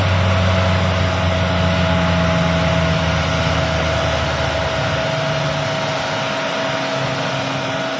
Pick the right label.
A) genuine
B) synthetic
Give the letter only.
A